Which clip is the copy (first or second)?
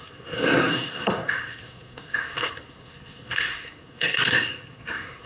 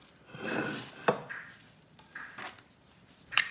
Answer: first